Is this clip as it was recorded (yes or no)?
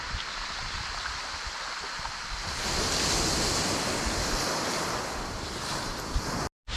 yes